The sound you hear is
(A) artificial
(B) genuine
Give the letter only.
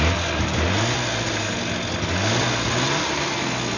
B